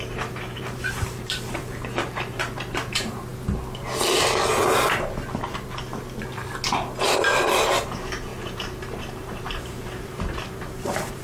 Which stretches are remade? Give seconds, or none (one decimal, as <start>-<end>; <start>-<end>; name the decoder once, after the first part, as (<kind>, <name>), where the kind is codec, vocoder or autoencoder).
0.0-3.3 (vocoder, BigVGAN v2); 7.8-11.2